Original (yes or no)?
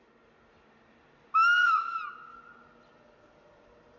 yes